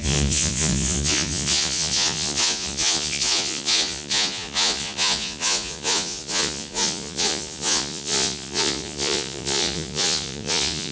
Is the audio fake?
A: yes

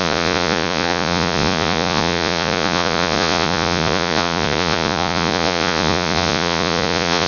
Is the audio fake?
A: yes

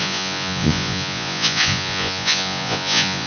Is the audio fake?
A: yes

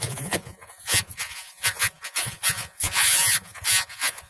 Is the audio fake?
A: yes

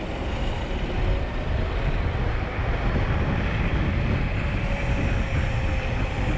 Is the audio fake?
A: no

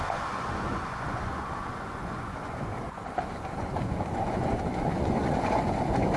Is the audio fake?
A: yes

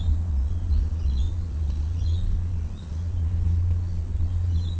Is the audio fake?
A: yes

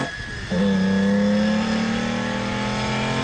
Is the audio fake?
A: no